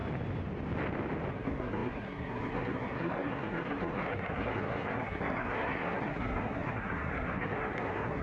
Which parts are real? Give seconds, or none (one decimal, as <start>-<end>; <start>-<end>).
0.0-1.3